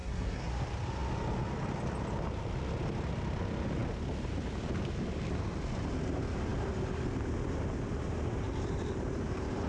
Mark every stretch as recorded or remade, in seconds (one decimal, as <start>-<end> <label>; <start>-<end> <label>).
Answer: 0.0-0.5 remade; 0.5-9.7 recorded

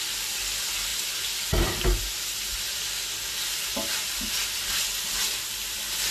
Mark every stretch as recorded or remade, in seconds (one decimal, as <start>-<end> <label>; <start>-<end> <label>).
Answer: 0.0-6.1 recorded

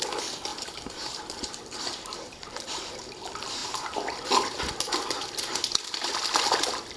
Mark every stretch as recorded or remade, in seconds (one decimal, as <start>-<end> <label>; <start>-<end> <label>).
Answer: 0.0-0.5 recorded; 0.5-2.9 remade; 2.9-7.0 recorded

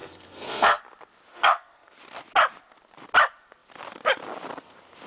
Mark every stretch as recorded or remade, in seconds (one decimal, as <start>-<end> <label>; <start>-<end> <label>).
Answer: 0.0-0.8 remade; 0.8-1.3 recorded; 1.3-2.0 remade; 2.0-5.1 recorded